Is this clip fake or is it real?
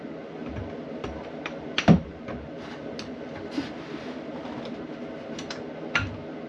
real